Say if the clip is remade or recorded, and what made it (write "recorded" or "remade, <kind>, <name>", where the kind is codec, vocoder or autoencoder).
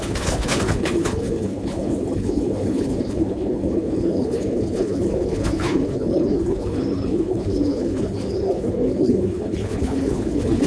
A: remade, codec, HILCodec